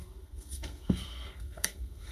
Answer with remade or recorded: remade